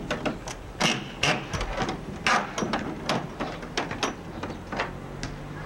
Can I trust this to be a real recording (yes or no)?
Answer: yes